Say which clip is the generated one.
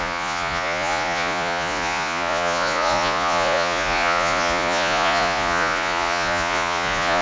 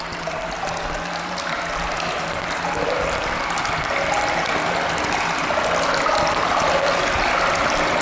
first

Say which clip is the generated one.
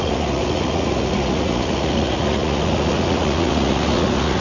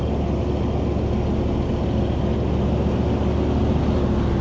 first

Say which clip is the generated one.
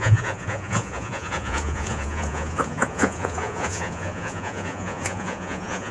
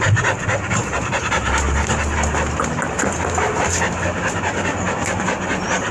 first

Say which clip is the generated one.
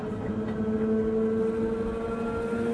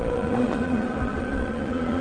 second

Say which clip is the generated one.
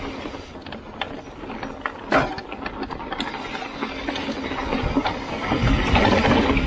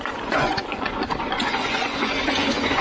second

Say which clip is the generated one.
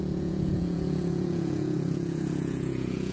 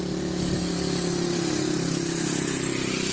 first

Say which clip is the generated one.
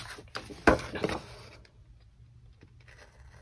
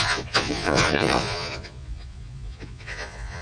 second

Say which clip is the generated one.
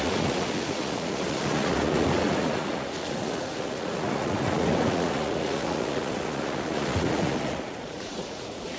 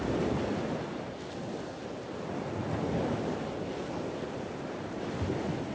first